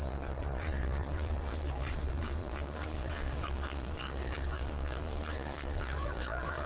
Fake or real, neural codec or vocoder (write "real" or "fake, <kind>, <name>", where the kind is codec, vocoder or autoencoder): fake, vocoder, Vocos